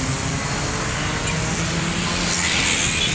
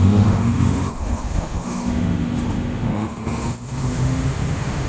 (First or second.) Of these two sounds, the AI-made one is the second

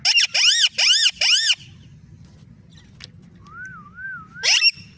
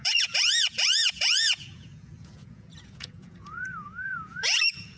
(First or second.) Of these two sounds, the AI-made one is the second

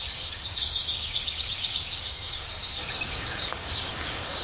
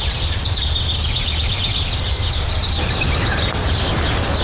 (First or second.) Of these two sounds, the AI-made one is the first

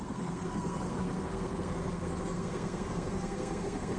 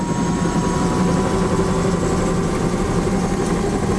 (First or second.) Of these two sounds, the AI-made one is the first